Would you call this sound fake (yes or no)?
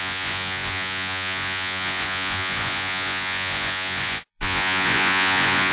yes